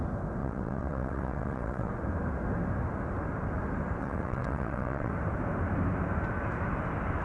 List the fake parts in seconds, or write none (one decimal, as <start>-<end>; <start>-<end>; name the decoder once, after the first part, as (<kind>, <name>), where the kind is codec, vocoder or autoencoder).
0.4-1.9 (vocoder, WaveNeXt); 4.0-5.1